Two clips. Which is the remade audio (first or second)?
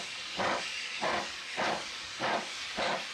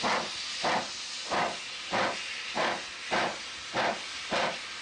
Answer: first